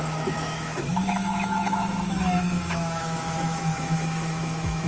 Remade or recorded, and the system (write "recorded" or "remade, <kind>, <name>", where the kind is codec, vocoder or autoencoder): remade, autoencoder, DAC-VAE